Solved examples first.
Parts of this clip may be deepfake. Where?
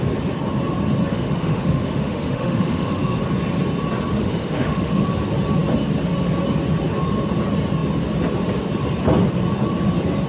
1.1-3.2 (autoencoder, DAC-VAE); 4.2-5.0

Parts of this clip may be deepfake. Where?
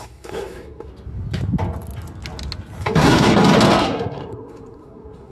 0.0-0.9 (codec, SNAC); 2.8-3.3; 3.8-5.3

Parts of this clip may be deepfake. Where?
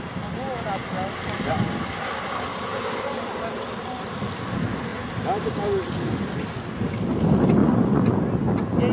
7.6-8.2 (vocoder, Vocos)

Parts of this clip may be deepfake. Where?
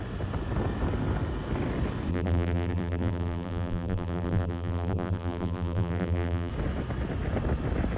2.1-6.5 (vocoder, BigVGAN v2)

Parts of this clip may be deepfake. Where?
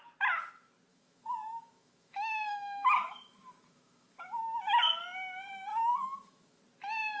0.9-4.4 (autoencoder, DAC-VAE); 5.7-6.6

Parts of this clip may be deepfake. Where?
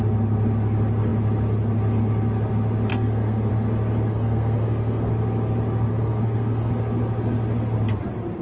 2.9-3.5 (codec, SNAC); 4.1-5.1; 5.9-6.7